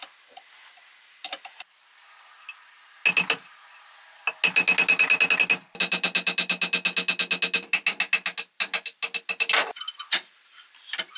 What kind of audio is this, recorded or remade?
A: recorded